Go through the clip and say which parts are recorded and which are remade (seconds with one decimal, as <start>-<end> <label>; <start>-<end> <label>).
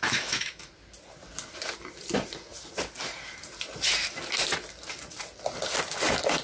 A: 0.0-0.7 remade; 0.7-6.4 recorded